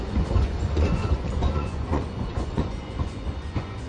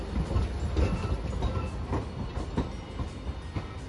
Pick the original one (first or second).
second